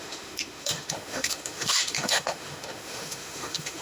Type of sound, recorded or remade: remade